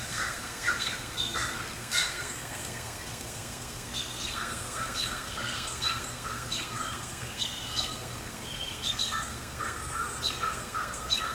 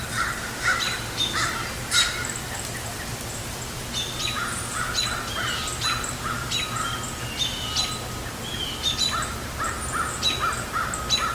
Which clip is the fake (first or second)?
first